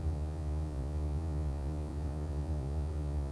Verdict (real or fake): fake